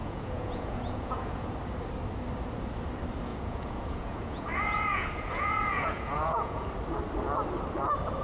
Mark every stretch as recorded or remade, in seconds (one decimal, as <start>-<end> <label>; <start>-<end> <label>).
0.0-1.5 remade; 1.5-3.3 recorded; 3.3-6.7 remade; 6.7-8.2 recorded